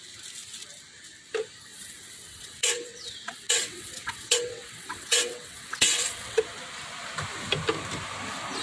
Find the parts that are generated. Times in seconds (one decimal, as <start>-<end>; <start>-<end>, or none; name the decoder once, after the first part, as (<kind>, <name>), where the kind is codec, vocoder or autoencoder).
1.7-6.4 (vocoder, WaveNeXt)